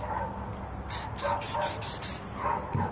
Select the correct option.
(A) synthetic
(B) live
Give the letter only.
B